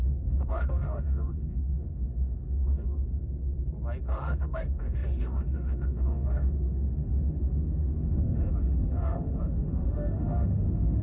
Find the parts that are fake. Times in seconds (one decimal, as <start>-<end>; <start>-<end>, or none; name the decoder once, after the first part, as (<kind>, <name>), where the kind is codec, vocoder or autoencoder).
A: 0.0-3.2 (autoencoder, DAC-VAE); 4.0-11.0